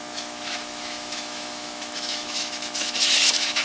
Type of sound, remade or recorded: remade